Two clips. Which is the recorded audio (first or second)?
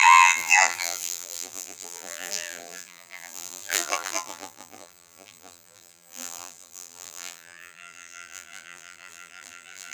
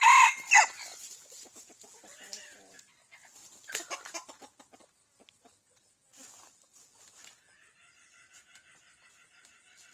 second